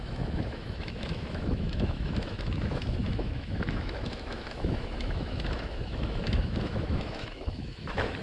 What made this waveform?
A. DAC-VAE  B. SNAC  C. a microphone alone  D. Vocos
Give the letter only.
A